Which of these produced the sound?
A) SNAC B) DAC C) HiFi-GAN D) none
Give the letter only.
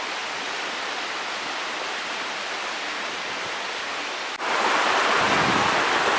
D